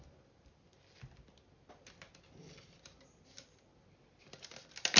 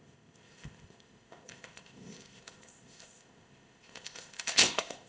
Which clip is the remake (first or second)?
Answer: second